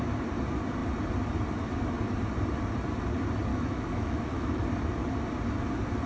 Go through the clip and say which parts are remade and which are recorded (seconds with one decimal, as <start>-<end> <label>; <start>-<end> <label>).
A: 0.0-3.5 recorded; 3.5-4.6 remade; 4.6-6.1 recorded